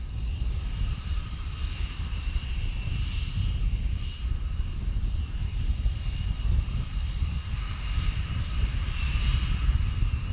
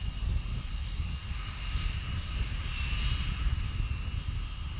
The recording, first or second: second